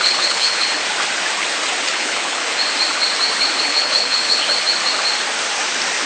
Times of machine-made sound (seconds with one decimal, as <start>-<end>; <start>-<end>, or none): 0.0-0.8; 1.9-2.4; 3.6-4.4